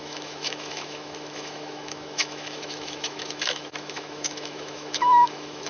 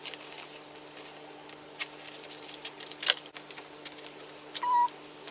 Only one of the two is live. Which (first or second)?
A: second